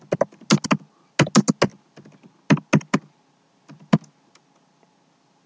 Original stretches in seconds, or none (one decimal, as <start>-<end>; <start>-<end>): 0.0-5.5